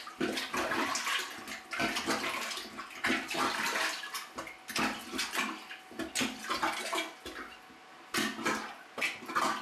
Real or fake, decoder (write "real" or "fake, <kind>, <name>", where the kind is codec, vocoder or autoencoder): real